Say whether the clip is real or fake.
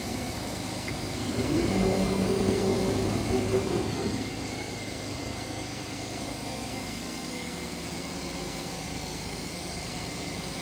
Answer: fake